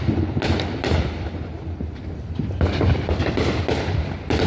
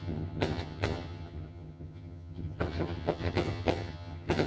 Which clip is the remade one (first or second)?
second